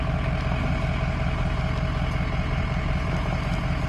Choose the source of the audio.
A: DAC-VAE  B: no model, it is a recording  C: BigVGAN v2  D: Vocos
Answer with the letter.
B